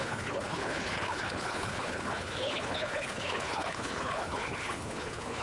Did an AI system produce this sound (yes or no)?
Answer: yes